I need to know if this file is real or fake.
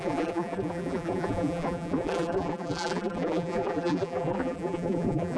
fake